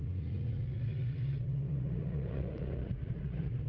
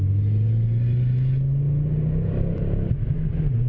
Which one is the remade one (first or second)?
first